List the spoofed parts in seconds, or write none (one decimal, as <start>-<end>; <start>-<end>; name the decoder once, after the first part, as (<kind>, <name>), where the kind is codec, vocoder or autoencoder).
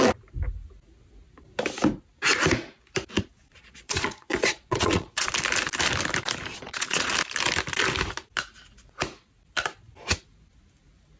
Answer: 3.5-5.3 (vocoder, Vocos); 6.5-7.1